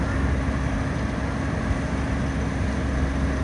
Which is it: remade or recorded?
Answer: recorded